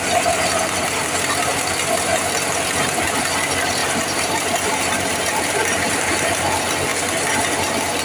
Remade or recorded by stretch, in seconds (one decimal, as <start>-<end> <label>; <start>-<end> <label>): 0.0-3.8 recorded; 3.8-6.3 remade; 6.3-8.0 recorded

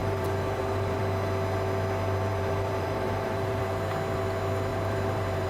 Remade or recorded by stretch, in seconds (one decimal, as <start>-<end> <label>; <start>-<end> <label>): 0.0-1.0 remade; 1.0-2.3 recorded; 2.3-3.6 remade; 3.6-4.7 recorded; 4.7-5.5 remade